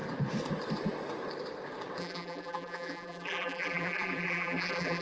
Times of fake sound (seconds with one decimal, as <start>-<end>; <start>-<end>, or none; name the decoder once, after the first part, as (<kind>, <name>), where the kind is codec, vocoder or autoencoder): 2.0-5.0 (vocoder, BigVGAN v2)